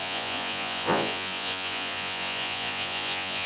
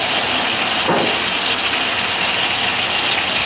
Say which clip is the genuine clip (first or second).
second